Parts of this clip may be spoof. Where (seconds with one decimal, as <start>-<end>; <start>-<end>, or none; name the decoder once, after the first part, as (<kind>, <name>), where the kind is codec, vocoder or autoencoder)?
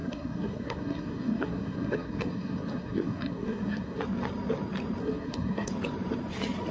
0.0-4.0 (codec, SNAC); 5.0-5.7